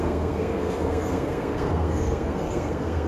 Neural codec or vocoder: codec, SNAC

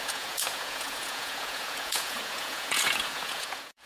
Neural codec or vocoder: vocoder, Vocos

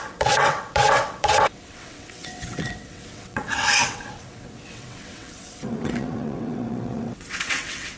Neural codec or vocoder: vocoder, WaveNeXt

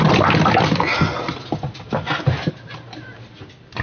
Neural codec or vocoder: none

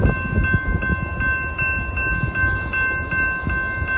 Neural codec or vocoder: none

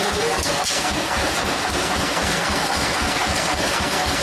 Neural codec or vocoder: codec, SNAC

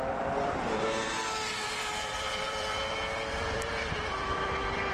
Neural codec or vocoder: vocoder, BigVGAN v2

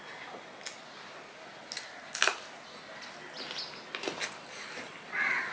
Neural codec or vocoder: none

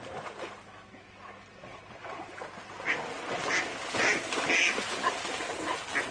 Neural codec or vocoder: none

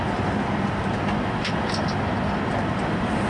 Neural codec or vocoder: none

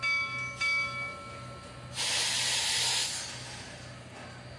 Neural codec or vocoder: none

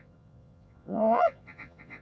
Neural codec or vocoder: vocoder, Vocos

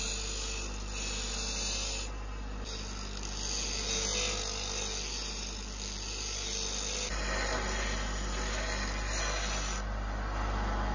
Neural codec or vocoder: none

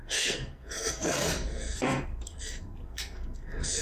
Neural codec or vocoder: codec, SNAC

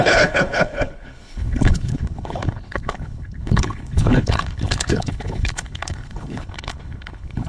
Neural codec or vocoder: codec, HILCodec